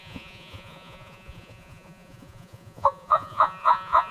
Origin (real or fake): fake